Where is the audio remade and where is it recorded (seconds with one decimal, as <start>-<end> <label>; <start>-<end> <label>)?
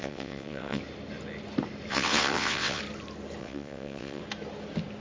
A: 0.0-0.8 remade; 0.8-1.9 recorded; 1.9-2.8 remade; 2.8-3.4 recorded; 3.4-4.2 remade; 4.2-5.0 recorded